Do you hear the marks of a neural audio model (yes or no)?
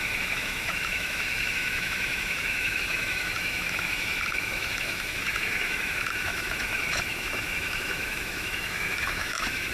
yes